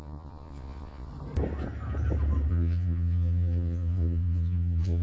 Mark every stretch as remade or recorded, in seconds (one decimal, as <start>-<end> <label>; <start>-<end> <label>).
0.0-1.1 remade; 1.1-2.5 recorded; 2.5-5.0 remade